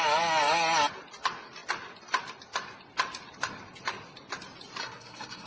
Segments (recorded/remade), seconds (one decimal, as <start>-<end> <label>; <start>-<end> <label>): 0.0-4.8 recorded; 4.8-5.5 remade